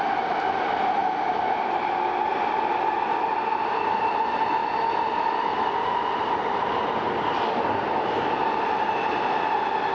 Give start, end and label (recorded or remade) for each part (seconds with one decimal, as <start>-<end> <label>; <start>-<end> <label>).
0.0-9.9 recorded